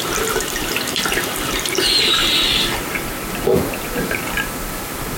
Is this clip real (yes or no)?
no